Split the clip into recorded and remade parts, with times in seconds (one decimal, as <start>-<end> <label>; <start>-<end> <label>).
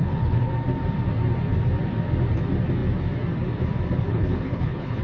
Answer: 0.0-0.5 remade; 0.5-4.1 recorded; 4.1-5.0 remade